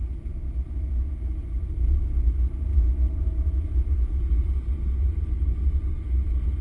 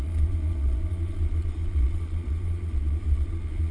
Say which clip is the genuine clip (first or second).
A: first